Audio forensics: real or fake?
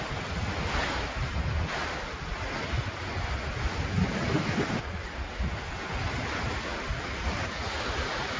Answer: real